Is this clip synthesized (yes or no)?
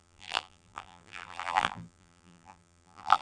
yes